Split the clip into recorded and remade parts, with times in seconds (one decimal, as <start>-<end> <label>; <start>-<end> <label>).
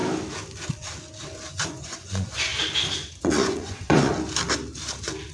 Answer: 0.0-1.5 recorded; 1.5-2.5 remade; 2.5-3.1 recorded; 3.1-4.1 remade; 4.1-5.3 recorded